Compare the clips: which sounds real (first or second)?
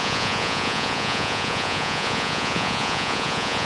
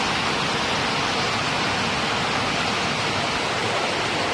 second